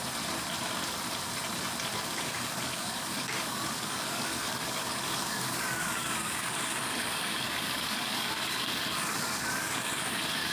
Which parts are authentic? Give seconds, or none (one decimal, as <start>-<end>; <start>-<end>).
0.0-2.0